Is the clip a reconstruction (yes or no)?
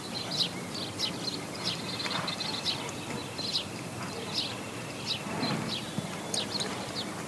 no